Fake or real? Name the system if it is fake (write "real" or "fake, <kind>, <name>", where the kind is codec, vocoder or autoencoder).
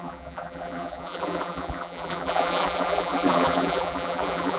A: fake, vocoder, BigVGAN v2